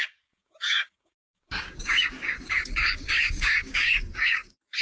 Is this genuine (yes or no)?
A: no